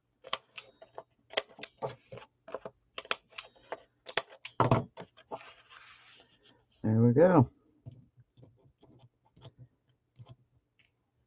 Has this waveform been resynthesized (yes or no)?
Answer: no